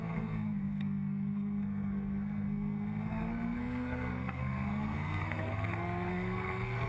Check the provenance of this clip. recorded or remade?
remade